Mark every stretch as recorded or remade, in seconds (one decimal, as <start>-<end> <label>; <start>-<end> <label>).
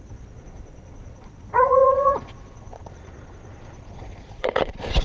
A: 0.0-5.0 remade